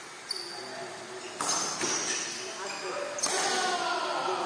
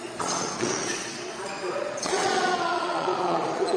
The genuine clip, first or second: first